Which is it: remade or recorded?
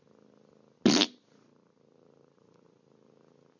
recorded